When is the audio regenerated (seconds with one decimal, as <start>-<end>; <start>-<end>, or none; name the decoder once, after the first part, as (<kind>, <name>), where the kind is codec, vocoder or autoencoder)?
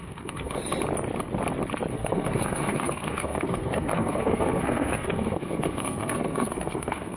0.0-0.6 (codec, SNAC); 1.9-7.2